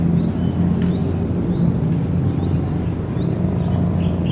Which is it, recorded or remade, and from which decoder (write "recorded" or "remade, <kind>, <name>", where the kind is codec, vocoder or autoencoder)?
recorded